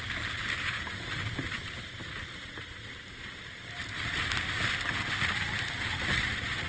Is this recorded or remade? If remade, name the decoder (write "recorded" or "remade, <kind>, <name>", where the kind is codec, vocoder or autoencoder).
recorded